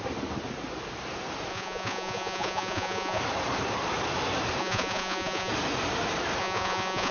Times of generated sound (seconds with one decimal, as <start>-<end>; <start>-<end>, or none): 1.5-3.2; 4.6-5.5; 6.4-7.1